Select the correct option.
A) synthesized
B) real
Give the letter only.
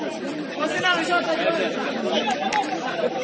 B